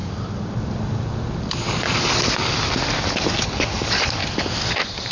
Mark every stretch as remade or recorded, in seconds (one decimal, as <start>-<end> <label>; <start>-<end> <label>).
0.0-3.1 recorded; 3.1-4.2 remade; 4.2-5.1 recorded